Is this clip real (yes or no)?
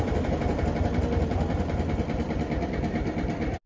yes